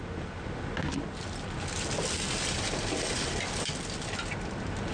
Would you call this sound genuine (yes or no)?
yes